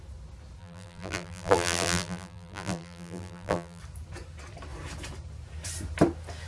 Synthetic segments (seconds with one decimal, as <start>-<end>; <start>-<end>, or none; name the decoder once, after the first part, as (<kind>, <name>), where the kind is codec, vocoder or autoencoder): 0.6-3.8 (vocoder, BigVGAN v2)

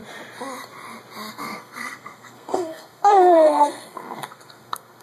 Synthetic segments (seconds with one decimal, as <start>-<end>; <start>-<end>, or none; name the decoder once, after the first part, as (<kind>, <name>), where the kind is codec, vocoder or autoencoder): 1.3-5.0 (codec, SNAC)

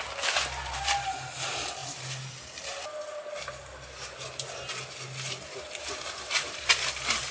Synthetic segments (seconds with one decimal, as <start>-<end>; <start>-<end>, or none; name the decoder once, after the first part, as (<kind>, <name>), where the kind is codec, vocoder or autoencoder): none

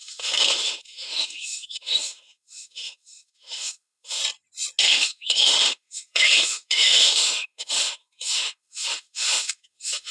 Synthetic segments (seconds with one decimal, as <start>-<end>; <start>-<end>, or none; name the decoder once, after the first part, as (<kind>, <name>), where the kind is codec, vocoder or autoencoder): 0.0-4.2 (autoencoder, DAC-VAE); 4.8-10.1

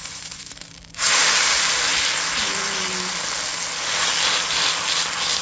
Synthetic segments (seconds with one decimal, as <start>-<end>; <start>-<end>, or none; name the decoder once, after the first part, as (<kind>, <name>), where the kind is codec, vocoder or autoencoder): 0.0-0.6 (vocoder, Vocos)

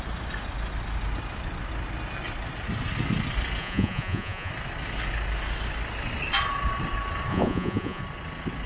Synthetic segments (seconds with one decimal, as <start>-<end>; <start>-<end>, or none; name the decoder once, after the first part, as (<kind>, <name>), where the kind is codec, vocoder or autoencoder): 3.6-4.5 (vocoder, Vocos); 7.3-8.0